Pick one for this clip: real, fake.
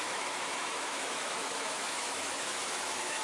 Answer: fake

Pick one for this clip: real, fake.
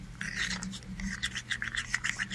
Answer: real